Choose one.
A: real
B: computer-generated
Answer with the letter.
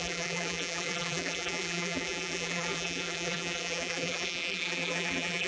B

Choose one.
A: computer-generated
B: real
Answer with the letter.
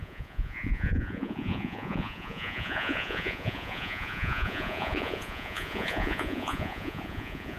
A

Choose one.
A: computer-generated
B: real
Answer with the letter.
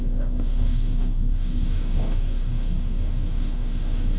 A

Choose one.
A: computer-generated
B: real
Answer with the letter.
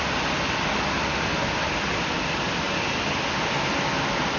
B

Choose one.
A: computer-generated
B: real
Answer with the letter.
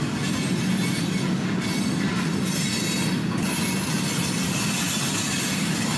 B